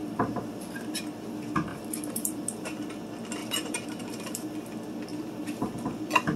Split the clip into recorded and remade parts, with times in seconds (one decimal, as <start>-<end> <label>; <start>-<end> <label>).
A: 0.0-1.0 remade; 1.0-1.7 recorded; 1.7-2.9 remade; 2.9-3.4 recorded; 3.4-4.5 remade; 4.5-5.1 recorded; 5.1-5.7 remade; 5.7-6.4 recorded